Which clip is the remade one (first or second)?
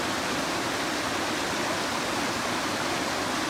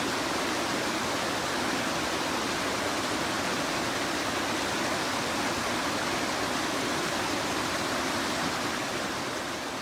first